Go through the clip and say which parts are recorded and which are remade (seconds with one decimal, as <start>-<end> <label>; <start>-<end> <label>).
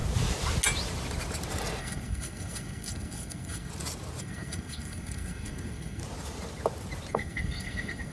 0.0-1.8 recorded; 1.8-3.7 remade; 3.7-4.2 recorded; 4.2-6.0 remade; 6.0-7.1 recorded; 7.1-8.1 remade